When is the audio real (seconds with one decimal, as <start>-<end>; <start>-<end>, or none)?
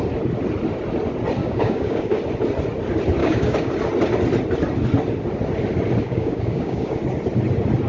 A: 0.0-1.4; 2.2-3.2; 3.7-6.0; 7.0-7.9